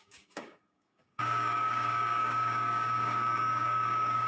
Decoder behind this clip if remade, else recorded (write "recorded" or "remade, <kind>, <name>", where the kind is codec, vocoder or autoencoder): remade, codec, DAC